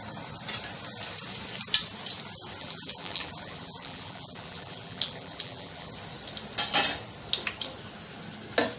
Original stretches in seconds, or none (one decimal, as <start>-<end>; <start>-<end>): 0.0-2.6; 5.9-8.8